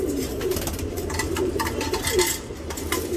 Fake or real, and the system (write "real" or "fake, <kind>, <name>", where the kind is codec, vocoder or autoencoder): real